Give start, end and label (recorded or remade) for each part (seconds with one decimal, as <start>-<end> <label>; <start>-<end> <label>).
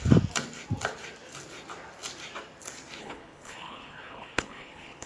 0.0-3.0 recorded; 3.0-5.1 remade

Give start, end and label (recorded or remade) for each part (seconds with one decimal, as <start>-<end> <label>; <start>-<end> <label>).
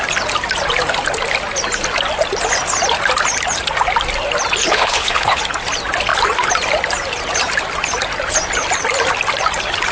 0.0-4.6 recorded; 4.6-5.4 remade; 5.4-9.9 recorded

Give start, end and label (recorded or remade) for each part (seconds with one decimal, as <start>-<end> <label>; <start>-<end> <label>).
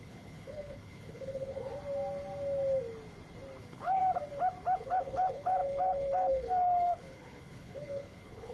0.0-1.7 remade; 1.7-3.6 recorded; 3.6-4.0 remade; 4.0-4.8 recorded; 4.8-8.5 remade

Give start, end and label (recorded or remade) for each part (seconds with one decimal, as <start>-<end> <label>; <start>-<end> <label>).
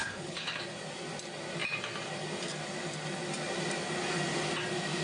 0.0-0.6 remade; 0.6-5.0 recorded